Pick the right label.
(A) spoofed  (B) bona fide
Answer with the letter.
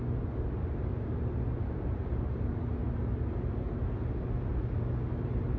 B